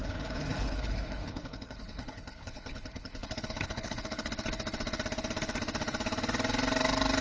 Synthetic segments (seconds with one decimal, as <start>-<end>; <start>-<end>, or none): 0.0-4.3